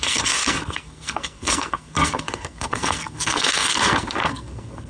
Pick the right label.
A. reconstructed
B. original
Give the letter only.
A